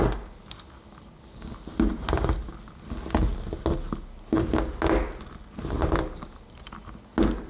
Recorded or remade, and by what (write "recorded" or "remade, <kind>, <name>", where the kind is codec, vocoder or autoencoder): recorded